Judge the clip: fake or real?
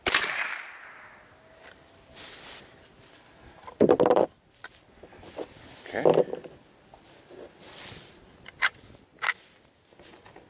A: real